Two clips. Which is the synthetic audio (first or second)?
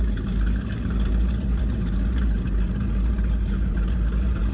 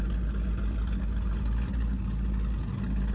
first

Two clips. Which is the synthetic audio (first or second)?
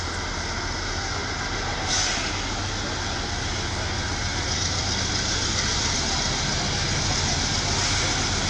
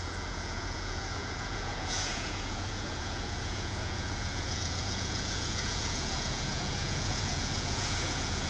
second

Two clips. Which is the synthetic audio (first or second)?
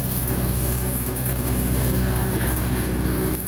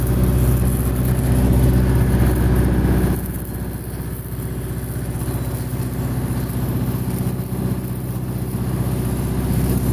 first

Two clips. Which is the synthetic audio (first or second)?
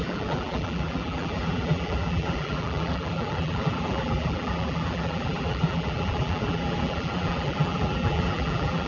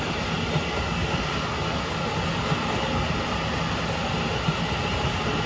first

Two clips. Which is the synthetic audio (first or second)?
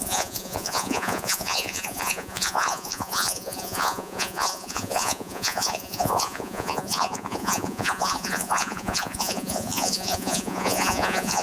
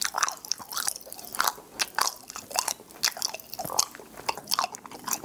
first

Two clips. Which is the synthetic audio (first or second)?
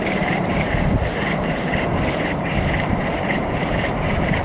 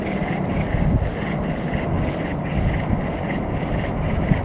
first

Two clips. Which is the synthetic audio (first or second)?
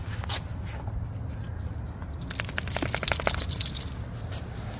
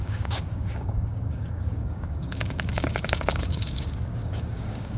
second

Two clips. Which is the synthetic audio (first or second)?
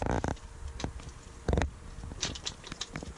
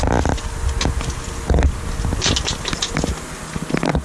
first